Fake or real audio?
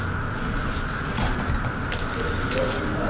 real